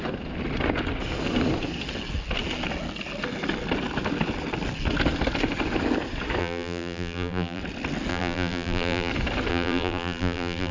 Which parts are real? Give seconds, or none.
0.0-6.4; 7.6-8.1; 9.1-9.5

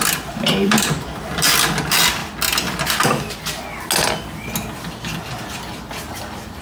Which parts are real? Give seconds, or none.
2.2-6.1

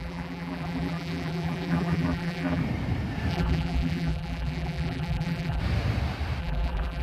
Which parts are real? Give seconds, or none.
2.6-3.3; 5.6-6.4